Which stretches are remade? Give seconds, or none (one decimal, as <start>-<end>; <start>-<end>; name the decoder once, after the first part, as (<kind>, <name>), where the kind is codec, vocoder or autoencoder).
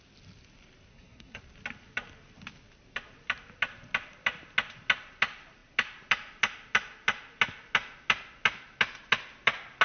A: 0.9-1.4 (codec, SNAC)